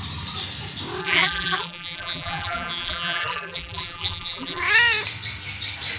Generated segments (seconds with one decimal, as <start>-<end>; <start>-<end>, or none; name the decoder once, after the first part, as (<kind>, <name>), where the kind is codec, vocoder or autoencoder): 1.0-4.6 (vocoder, BigVGAN v2)